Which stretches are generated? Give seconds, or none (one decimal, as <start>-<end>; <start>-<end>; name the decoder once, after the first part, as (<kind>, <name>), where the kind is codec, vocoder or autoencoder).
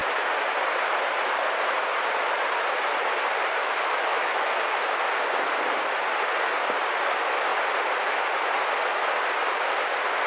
3.6-4.5 (autoencoder, DAC-VAE)